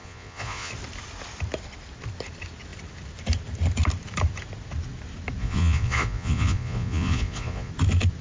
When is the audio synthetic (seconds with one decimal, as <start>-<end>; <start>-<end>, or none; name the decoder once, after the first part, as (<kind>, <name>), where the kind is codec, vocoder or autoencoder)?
0.0-0.7 (vocoder, Vocos); 5.4-7.7